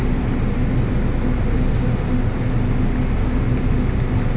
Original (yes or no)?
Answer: yes